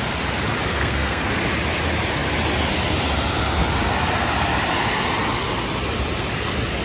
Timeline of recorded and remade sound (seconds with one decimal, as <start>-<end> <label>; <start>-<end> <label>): 0.0-0.7 recorded; 0.7-1.3 remade; 1.3-6.8 recorded